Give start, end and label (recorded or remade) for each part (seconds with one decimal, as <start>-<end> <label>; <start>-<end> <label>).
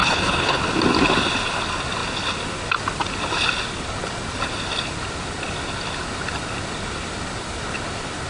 0.0-0.6 remade; 0.6-8.3 recorded